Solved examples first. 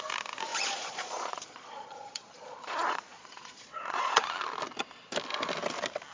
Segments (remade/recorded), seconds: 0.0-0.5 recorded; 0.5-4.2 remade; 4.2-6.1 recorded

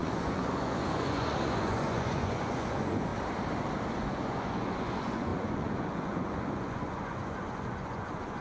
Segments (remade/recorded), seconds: 0.0-3.1 remade; 3.1-3.9 recorded; 3.9-8.4 remade

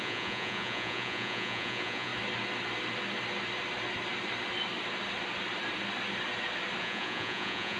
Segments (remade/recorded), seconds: 0.0-2.1 remade; 2.1-6.8 recorded; 6.8-7.8 remade

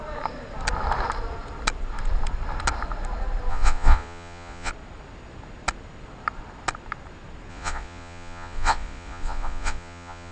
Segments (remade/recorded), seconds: 0.0-3.5 recorded; 3.5-4.7 remade; 4.7-7.5 recorded; 7.5-10.3 remade

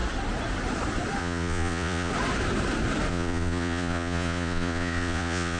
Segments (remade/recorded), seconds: 0.0-1.2 recorded; 1.2-2.1 remade; 2.1-3.1 recorded; 3.1-5.6 remade